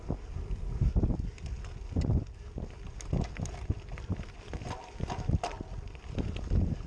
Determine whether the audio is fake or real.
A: real